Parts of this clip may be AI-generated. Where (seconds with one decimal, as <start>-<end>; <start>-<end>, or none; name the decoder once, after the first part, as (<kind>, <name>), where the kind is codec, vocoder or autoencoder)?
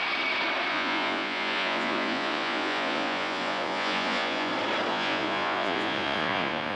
0.7-4.5 (vocoder, Vocos); 4.9-6.8